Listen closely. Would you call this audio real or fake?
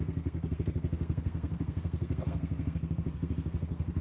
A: fake